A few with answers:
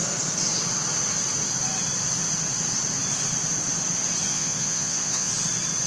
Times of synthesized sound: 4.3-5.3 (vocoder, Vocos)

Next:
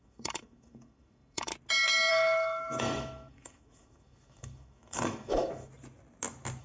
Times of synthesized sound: 0.0-1.5 (autoencoder, DAC-VAE); 2.1-5.7

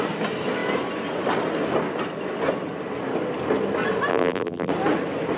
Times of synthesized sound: 4.1-4.7 (vocoder, BigVGAN v2)

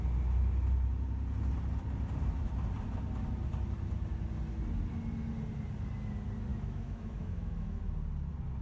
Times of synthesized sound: 6.5-7.8 (autoencoder, DAC-VAE)

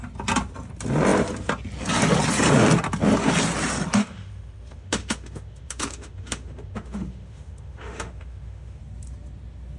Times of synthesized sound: 4.0-8.8 (autoencoder, DAC-VAE)